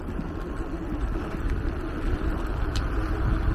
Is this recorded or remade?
recorded